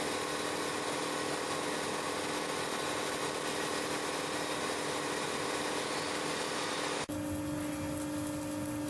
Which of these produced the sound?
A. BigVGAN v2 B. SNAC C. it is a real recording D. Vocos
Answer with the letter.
C